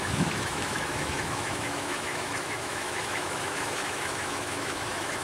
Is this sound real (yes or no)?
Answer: no